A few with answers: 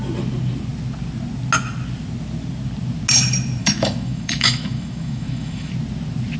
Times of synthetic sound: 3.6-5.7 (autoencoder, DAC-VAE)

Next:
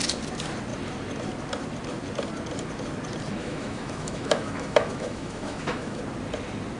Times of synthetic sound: 3.4-6.0 (autoencoder, DAC-VAE)

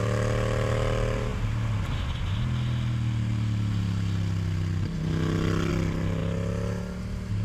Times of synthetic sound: none

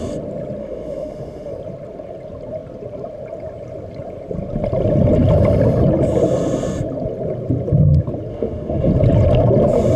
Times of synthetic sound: 0.6-1.5 (autoencoder, DAC-VAE); 8.3-8.9

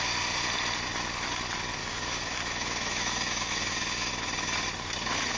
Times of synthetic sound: 1.8-4.1 (autoencoder, DAC-VAE)

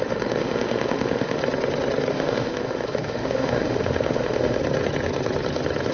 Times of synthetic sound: 0.0-1.4 (autoencoder, DAC-VAE); 2.1-4.6